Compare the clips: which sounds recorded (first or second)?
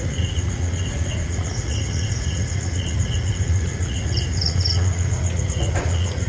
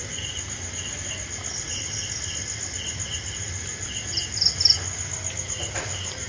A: second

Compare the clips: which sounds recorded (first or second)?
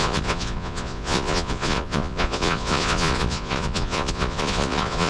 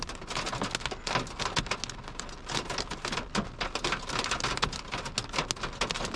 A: second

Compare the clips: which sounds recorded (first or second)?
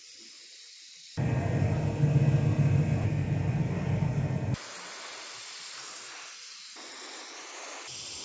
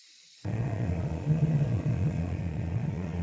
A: first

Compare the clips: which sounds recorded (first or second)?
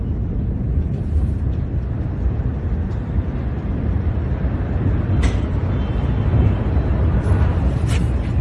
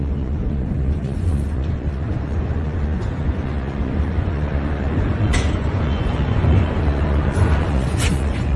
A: first